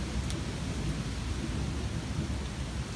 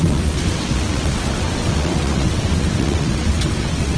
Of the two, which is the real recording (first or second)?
first